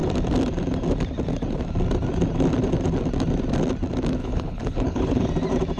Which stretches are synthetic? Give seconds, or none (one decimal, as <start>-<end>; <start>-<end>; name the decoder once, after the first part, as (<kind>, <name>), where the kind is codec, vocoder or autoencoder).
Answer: 4.2-5.3 (codec, HILCodec)

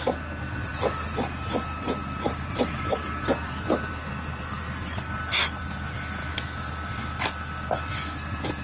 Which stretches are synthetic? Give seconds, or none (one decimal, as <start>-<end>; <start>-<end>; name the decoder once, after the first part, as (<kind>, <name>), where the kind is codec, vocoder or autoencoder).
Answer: 6.2-6.7 (autoencoder, DAC-VAE)

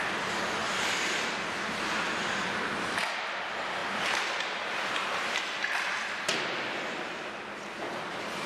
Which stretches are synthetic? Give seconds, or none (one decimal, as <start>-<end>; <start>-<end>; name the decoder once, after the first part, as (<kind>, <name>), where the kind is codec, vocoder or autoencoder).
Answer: 0.6-2.2 (vocoder, BigVGAN v2)

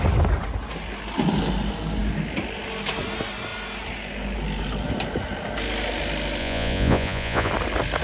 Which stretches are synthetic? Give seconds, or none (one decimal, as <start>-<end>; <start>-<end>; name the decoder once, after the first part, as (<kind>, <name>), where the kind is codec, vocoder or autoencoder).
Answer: 6.4-7.5 (vocoder, Vocos)